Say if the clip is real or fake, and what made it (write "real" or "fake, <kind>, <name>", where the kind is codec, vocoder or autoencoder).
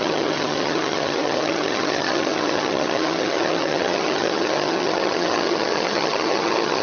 fake, vocoder, HiFi-GAN